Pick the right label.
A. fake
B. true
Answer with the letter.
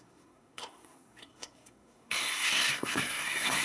A